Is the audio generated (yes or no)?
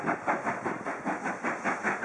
no